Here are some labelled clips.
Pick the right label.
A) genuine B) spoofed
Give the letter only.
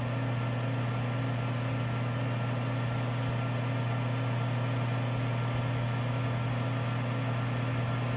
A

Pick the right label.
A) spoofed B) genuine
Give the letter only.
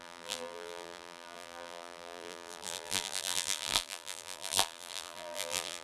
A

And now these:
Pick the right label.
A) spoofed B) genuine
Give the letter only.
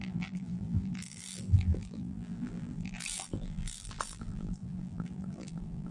A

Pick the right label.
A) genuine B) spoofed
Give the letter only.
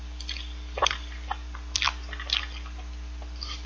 B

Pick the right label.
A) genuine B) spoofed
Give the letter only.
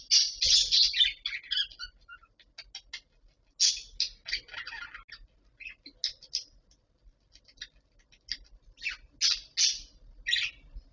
A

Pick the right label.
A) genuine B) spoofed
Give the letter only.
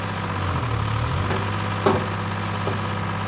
A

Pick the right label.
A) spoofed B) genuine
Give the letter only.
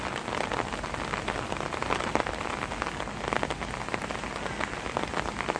B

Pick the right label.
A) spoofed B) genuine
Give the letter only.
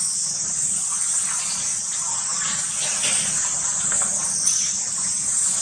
B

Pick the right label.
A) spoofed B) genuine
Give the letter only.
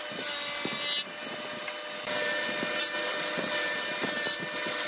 B